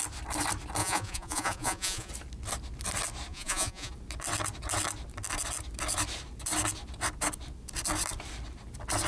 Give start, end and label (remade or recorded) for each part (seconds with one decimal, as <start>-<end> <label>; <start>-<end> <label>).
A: 0.0-0.8 recorded; 0.8-2.1 remade; 2.1-3.3 recorded; 3.3-3.9 remade; 3.9-9.1 recorded